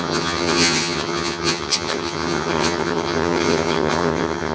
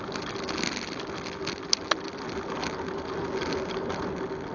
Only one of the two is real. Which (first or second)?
second